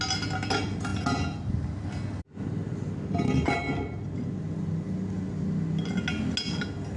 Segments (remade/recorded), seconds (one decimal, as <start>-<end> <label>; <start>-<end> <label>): 0.0-7.0 recorded